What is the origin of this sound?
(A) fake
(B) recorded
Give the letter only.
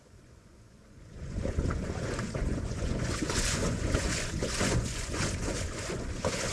A